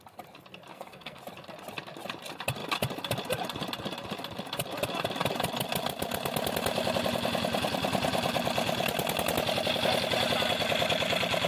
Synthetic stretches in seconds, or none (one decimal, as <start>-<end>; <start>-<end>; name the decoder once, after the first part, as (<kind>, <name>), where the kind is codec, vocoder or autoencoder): 0.7-1.2 (codec, SNAC)